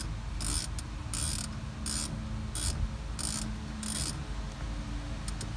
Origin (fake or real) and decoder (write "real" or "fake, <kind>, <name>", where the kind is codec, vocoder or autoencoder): real